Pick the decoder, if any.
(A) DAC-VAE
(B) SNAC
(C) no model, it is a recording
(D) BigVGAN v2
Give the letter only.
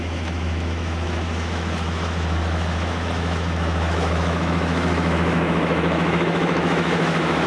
A